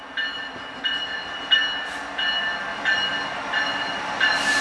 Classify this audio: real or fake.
real